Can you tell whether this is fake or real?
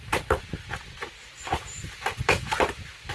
real